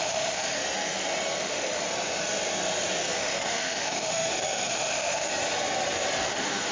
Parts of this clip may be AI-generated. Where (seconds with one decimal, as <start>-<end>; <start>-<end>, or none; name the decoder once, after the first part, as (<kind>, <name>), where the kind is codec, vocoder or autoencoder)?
0.0-0.6 (autoencoder, DAC-VAE); 1.4-1.8; 3.2-5.3; 6.3-6.7